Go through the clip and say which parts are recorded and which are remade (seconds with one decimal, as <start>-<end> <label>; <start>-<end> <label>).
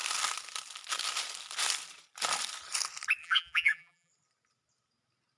0.0-3.2 recorded; 3.2-4.1 remade; 4.1-5.4 recorded